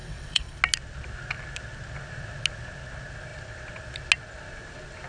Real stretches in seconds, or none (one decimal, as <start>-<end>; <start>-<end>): 0.6-5.1